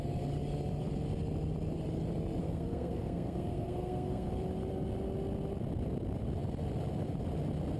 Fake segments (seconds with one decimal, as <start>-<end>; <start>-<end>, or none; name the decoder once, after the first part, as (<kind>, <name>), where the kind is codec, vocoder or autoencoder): 2.4-4.3 (codec, SNAC)